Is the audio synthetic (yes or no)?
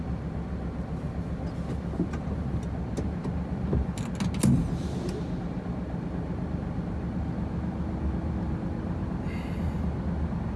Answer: no